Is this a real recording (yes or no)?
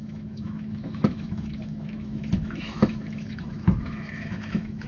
no